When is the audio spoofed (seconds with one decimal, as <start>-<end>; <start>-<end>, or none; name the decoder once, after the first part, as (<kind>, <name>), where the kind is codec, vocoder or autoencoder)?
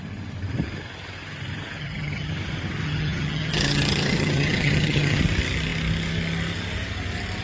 1.8-2.3 (vocoder, HiFi-GAN); 2.8-5.2